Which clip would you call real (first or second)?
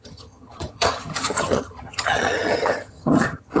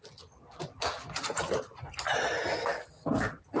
second